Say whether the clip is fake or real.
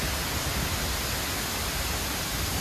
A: real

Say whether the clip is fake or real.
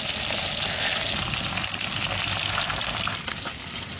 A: real